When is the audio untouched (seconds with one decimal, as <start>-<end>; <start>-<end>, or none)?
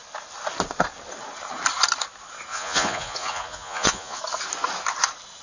0.0-2.5; 4.2-5.4